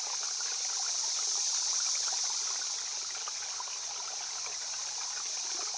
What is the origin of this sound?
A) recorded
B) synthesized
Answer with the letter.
A